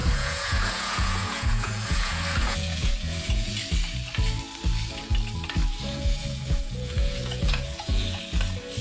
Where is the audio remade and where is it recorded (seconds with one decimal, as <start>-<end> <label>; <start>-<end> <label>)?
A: 0.0-3.5 remade; 3.5-5.7 recorded; 5.7-8.2 remade; 8.2-8.8 recorded

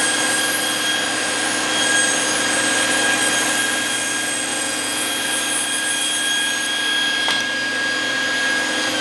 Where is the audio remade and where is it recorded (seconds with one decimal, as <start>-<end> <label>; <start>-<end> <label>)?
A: 0.0-4.5 recorded; 4.5-5.1 remade; 5.1-9.0 recorded

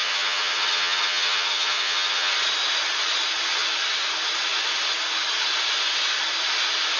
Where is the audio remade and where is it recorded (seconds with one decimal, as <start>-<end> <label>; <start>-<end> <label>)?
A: 0.0-2.3 remade; 2.3-7.0 recorded